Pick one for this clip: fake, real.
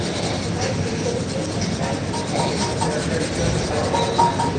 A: real